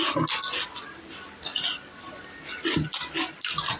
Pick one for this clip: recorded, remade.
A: recorded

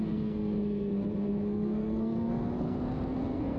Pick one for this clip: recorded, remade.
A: remade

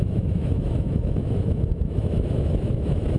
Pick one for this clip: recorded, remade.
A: remade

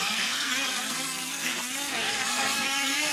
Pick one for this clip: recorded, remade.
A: remade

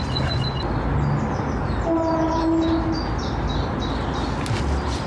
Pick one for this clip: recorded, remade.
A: recorded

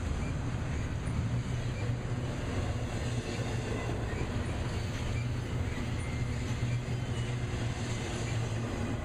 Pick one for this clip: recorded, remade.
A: recorded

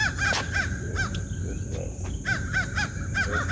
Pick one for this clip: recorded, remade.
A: recorded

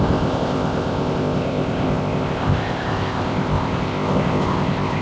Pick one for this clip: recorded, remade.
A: remade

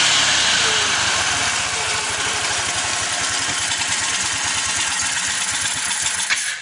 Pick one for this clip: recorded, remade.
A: recorded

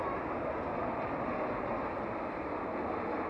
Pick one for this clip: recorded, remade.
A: recorded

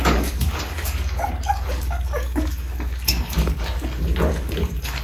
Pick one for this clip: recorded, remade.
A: remade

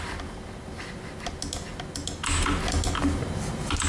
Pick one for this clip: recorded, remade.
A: recorded